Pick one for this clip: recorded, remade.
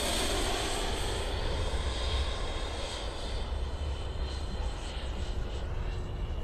recorded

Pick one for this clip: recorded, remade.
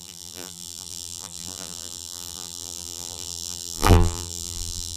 remade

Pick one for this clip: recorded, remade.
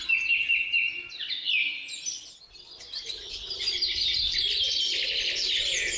recorded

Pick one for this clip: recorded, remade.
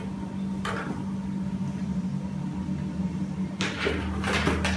recorded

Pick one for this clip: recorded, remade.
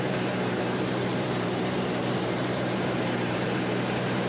remade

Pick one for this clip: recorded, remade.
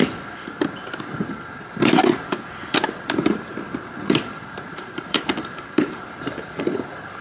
remade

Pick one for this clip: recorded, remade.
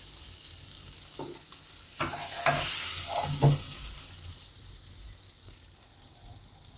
recorded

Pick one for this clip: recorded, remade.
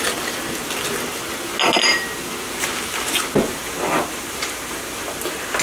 recorded